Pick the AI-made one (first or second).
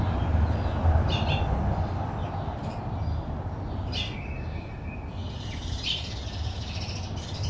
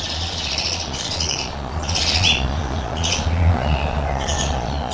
second